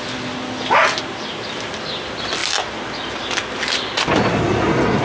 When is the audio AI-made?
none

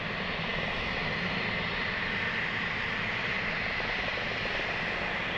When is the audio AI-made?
none